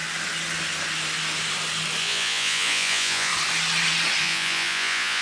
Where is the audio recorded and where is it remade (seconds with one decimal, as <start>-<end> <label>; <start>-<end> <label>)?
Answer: 0.0-2.0 recorded; 2.0-3.3 remade; 3.3-4.2 recorded; 4.2-5.2 remade

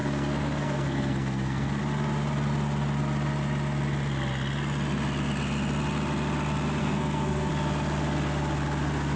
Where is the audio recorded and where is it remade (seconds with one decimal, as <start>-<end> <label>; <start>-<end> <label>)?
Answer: 0.0-1.8 remade; 1.8-6.8 recorded; 6.8-7.5 remade; 7.5-9.2 recorded

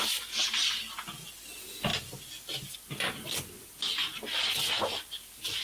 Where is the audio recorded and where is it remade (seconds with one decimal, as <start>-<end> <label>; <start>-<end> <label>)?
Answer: 0.0-5.6 recorded

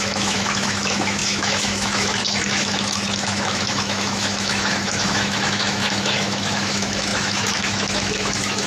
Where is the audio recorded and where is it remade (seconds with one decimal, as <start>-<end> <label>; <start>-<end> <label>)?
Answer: 0.0-8.7 remade